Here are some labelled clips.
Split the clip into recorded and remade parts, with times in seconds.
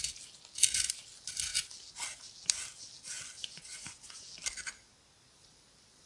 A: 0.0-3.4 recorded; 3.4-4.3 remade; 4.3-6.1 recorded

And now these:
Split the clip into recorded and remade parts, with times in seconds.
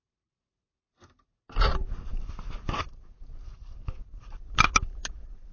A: 0.0-5.5 recorded